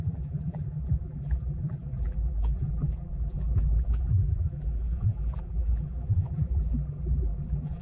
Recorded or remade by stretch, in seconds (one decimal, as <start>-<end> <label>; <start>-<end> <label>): 0.0-7.8 remade